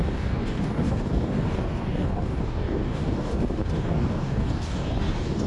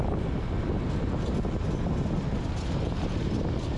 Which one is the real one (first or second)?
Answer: second